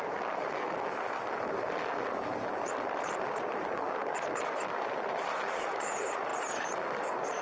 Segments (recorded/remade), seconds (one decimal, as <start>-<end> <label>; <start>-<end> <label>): 0.0-7.4 recorded